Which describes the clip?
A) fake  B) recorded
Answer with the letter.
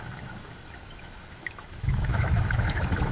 A